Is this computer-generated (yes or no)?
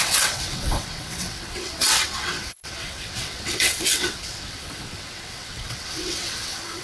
yes